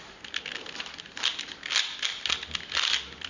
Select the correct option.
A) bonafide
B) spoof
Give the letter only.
A